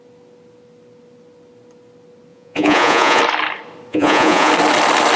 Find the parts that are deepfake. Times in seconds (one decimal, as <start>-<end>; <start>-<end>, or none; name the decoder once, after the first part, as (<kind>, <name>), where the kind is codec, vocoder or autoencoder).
2.3-3.2 (vocoder, Vocos); 3.9-4.5

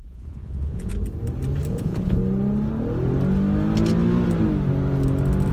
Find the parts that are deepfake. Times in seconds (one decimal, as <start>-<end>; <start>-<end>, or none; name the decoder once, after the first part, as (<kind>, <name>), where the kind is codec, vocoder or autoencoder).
0.0-0.9 (vocoder, Vocos); 1.7-2.2

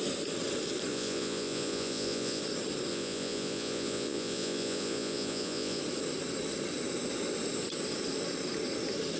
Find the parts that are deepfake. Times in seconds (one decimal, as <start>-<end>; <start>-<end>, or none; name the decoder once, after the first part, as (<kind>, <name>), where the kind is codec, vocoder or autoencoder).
0.9-2.4 (vocoder, Vocos); 2.9-5.8

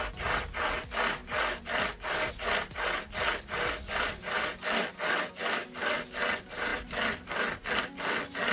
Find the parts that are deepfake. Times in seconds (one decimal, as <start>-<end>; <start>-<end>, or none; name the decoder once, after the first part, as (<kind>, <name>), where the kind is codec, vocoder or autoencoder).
none

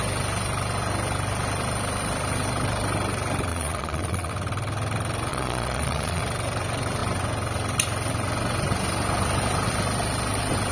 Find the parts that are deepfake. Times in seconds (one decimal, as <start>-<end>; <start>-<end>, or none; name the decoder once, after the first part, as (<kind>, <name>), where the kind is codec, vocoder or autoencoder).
3.5-4.3 (vocoder, Vocos); 5.3-6.2

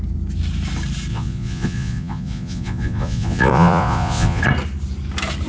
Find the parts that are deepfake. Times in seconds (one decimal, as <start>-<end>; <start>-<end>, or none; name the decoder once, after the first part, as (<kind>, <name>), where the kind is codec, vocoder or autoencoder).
1.1-4.4 (vocoder, Vocos)

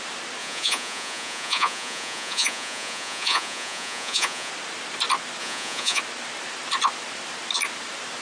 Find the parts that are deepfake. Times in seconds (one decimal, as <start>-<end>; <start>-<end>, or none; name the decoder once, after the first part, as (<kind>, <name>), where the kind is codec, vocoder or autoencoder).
0.4-4.5 (vocoder, Vocos); 5.4-6.0

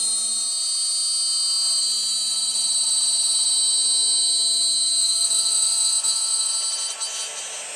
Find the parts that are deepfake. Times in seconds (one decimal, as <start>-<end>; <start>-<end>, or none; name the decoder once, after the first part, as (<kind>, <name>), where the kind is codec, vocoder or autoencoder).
5.0-6.5 (vocoder, Vocos)